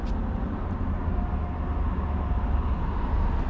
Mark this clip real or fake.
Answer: real